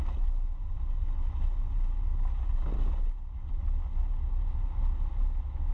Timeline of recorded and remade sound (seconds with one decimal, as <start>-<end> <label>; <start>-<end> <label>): 0.0-5.7 recorded